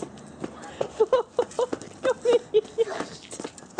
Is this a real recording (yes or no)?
yes